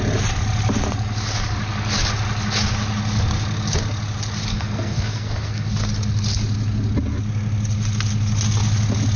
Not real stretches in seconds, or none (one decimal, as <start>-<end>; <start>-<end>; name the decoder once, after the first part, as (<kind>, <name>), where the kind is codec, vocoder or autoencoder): 4.5-5.7 (codec, SNAC)

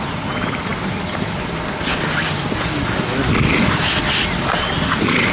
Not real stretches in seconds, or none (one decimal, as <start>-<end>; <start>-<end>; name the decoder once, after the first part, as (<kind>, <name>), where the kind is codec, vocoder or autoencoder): none

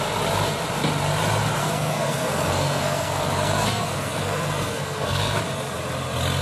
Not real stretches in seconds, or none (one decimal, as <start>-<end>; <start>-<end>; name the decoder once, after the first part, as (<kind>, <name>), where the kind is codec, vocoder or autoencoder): 1.6-5.4 (codec, SNAC)